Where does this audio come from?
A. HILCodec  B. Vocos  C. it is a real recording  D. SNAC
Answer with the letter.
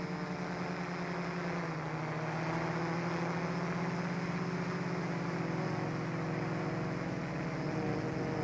C